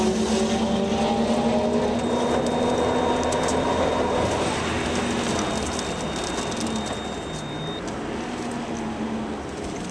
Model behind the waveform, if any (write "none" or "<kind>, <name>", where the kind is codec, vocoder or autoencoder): none